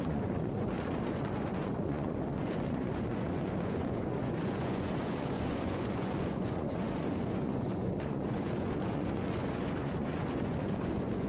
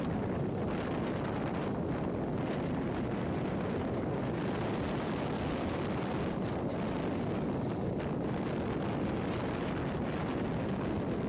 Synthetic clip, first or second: first